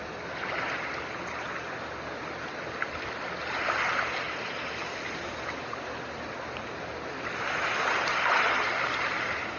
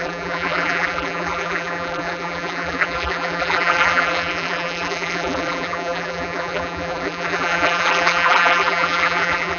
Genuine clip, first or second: first